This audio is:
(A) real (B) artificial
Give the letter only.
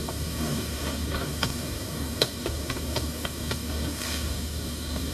B